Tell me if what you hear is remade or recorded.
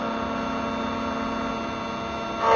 recorded